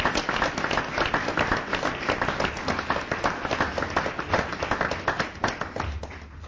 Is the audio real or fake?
real